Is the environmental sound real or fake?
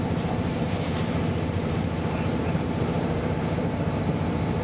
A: fake